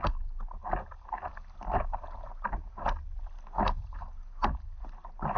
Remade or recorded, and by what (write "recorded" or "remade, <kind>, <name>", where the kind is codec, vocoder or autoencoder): recorded